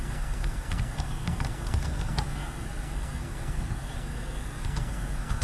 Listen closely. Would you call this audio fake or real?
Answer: fake